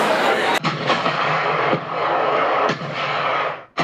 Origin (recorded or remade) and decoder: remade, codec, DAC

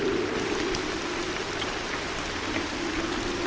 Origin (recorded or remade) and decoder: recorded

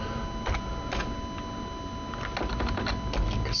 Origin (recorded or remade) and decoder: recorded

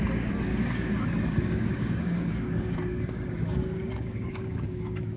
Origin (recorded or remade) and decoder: remade, codec, DAC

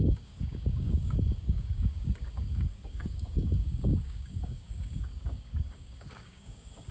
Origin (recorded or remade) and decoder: remade, codec, DAC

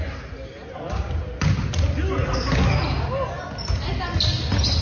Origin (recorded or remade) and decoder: recorded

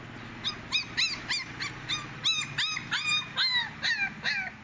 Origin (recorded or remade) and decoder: recorded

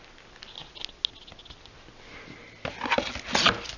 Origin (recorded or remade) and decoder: recorded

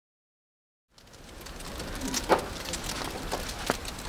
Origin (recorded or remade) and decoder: recorded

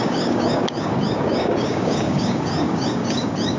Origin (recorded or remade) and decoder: remade, codec, DAC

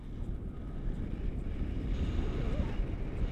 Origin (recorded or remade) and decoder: recorded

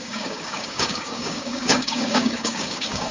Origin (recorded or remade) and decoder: remade, codec, DAC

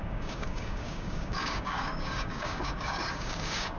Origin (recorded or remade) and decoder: remade, codec, DAC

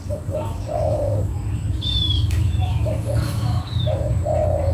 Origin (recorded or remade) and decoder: remade, codec, DAC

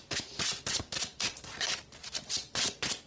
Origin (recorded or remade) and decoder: recorded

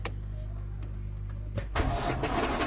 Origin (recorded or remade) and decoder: recorded